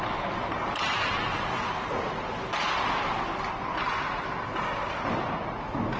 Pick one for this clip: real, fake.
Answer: real